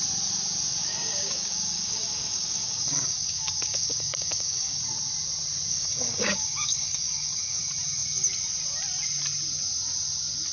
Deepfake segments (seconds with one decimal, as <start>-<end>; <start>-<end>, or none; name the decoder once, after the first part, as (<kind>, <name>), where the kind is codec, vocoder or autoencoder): 0.8-4.8 (codec, DAC); 5.7-7.6